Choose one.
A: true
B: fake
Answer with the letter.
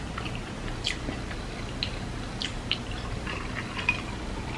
A